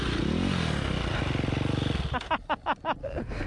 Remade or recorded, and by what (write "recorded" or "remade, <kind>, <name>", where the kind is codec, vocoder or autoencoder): recorded